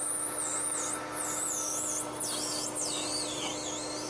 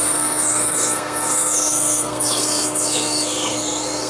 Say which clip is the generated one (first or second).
second